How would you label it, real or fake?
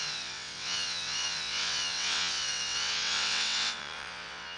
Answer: fake